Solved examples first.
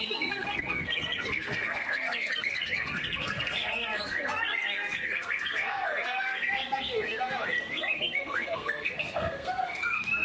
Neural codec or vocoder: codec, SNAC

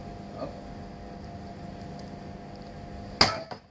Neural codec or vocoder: none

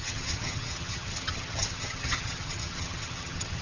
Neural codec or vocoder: vocoder, HiFi-GAN